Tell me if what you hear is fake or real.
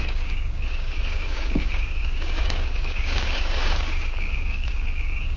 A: fake